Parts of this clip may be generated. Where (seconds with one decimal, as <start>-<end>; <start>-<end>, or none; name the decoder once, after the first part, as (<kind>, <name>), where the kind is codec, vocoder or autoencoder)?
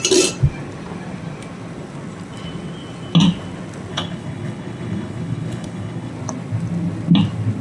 3.9-6.1 (codec, HILCodec)